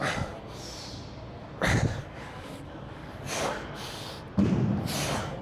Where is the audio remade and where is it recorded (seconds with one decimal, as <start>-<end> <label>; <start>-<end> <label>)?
0.0-2.0 recorded; 2.0-4.1 remade; 4.1-5.4 recorded